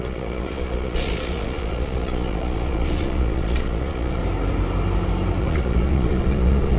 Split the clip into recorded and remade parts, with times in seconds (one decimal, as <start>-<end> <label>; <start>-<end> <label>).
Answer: 0.0-4.2 remade; 4.2-5.4 recorded; 5.4-6.8 remade